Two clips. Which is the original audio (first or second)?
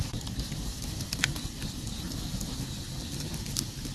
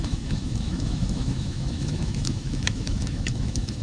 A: first